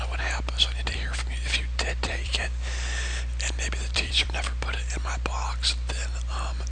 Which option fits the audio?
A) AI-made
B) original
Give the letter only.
A